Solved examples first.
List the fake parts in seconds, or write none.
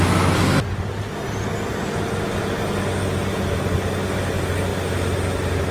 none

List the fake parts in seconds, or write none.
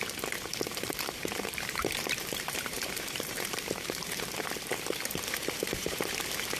0.5-4.5 (vocoder, BigVGAN v2); 5.4-6.1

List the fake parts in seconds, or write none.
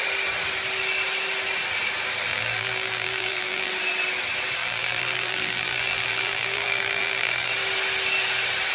2.3-3.7 (vocoder, BigVGAN v2); 4.6-7.5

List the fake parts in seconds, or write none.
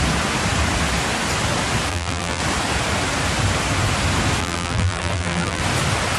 1.9-2.4 (vocoder, BigVGAN v2); 4.4-5.6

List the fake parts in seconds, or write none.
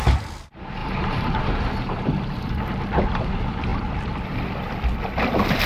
0.8-2.6 (vocoder, BigVGAN v2)